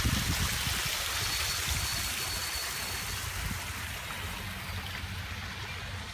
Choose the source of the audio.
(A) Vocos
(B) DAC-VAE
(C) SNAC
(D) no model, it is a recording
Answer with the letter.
D